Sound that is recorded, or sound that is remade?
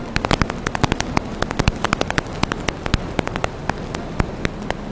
recorded